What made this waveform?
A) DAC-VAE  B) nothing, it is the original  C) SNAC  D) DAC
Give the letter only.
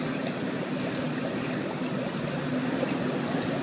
B